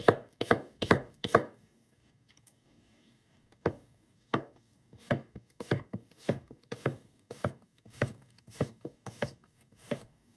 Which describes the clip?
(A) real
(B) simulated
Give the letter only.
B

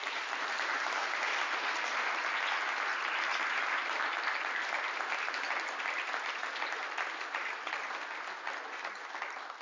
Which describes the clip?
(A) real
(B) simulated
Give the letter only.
A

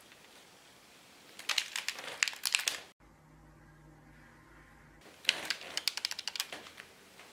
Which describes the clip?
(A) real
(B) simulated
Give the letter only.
A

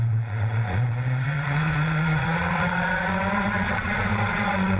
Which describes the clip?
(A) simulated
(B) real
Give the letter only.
A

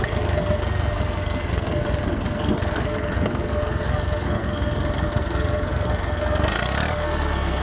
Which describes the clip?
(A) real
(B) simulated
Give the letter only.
B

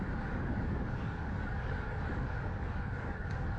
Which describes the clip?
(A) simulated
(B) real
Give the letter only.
A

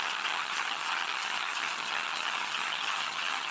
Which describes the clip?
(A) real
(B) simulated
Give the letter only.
B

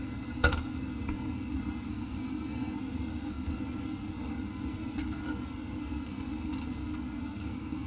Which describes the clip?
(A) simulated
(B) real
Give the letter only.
A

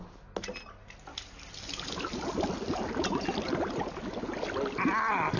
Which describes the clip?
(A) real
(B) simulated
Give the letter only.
A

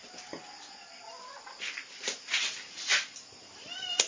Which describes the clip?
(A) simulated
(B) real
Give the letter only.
A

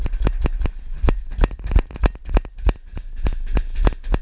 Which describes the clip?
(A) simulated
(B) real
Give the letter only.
B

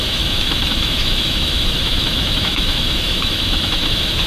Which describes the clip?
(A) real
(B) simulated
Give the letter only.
B